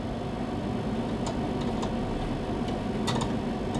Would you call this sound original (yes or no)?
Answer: yes